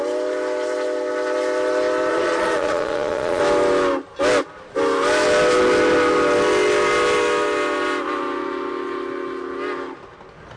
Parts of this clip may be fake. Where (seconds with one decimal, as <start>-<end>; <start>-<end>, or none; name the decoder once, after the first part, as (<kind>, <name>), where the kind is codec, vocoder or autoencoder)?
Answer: 2.1-3.4 (vocoder, Vocos)